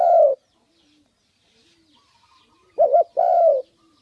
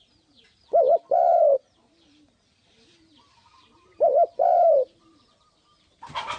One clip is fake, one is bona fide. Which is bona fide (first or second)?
first